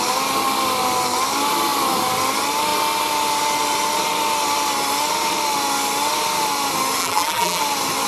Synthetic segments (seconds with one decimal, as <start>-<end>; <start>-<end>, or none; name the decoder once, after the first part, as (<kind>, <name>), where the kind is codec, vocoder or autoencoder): 7.0-7.6 (vocoder, BigVGAN v2)